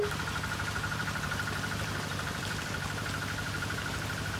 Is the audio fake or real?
fake